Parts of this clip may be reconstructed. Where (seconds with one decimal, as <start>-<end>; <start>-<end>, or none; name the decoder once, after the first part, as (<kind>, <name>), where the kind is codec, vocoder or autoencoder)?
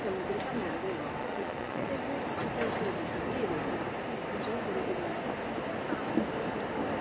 1.2-1.9 (vocoder, Vocos)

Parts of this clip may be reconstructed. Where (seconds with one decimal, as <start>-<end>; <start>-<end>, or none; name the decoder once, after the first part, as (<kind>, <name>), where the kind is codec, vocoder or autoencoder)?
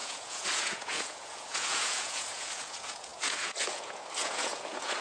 0.0-5.0 (vocoder, Vocos)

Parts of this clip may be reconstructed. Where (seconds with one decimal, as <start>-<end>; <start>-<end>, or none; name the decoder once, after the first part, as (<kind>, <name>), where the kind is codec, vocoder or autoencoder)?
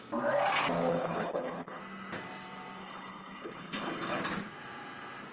0.9-1.8 (codec, HILCodec); 2.8-4.2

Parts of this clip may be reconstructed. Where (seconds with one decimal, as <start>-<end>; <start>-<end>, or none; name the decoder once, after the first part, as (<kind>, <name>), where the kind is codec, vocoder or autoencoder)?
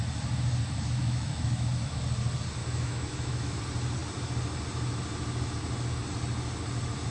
1.0-2.0 (autoencoder, DAC-VAE); 2.6-3.6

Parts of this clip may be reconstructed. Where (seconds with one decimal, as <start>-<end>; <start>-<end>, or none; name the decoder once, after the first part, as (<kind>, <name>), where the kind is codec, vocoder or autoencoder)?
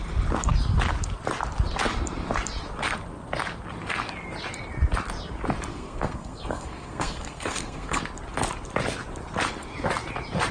5.7-8.0 (codec, SNAC)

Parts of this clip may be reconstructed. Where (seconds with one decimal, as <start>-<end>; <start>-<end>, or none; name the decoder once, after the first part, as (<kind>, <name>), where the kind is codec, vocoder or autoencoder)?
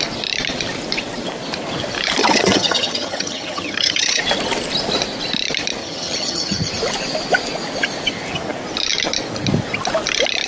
2.2-4.2 (vocoder, HiFi-GAN); 5.8-6.7